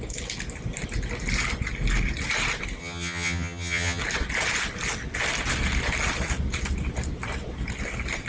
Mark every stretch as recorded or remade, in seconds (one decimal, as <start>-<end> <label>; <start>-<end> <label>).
0.0-2.8 recorded; 2.8-4.0 remade; 4.0-8.3 recorded

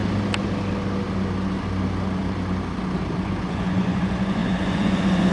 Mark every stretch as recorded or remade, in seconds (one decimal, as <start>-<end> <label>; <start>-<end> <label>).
0.0-3.2 recorded; 3.2-5.3 remade

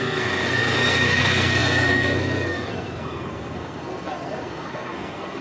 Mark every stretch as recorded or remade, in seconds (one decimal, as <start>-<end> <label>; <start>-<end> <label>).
0.0-5.4 remade

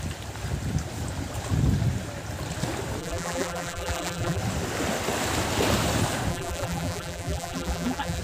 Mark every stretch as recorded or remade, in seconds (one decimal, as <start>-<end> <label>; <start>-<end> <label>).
0.0-3.0 recorded; 3.0-4.4 remade; 4.4-6.3 recorded; 6.3-8.2 remade

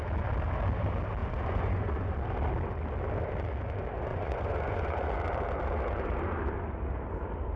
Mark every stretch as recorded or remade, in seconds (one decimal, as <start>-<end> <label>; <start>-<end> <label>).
0.0-1.2 recorded; 1.2-2.1 remade; 2.1-4.1 recorded; 4.1-5.1 remade; 5.1-7.6 recorded

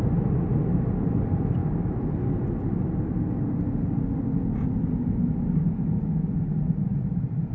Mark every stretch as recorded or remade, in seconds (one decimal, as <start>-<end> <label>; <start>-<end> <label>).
0.0-7.5 recorded